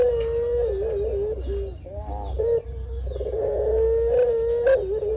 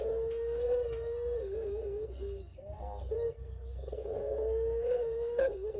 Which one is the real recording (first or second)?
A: first